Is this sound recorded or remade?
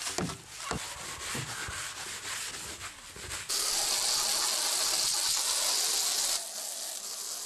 recorded